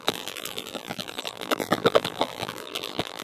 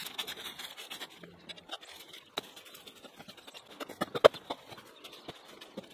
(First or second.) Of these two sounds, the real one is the second